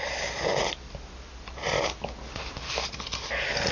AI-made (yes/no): no